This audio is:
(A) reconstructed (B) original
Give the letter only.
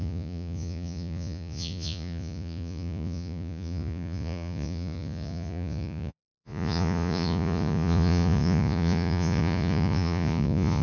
A